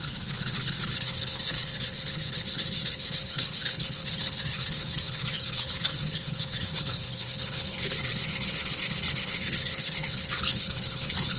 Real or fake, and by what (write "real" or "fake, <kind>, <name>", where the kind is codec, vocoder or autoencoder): fake, codec, HILCodec